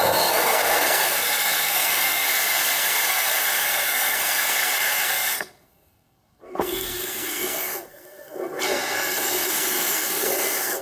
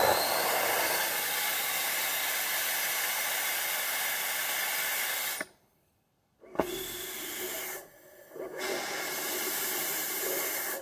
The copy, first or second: first